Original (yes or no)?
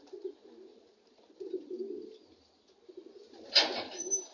yes